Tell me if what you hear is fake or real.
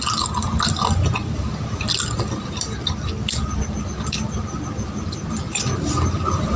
real